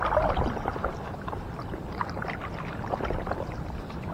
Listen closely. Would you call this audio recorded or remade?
remade